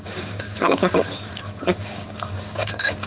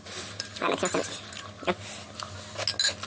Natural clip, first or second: second